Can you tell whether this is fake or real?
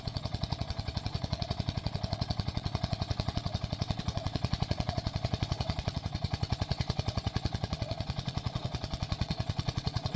fake